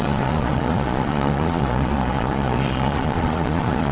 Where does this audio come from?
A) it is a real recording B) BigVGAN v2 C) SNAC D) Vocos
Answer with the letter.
D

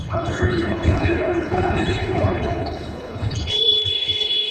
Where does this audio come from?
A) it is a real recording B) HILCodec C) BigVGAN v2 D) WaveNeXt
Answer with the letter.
B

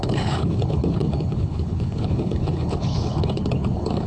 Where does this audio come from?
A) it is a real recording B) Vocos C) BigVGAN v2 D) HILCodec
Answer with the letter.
D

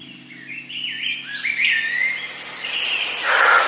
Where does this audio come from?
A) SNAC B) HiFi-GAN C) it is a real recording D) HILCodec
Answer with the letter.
C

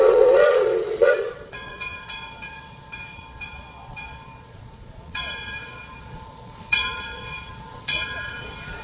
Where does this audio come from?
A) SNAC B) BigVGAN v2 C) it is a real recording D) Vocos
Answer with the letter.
D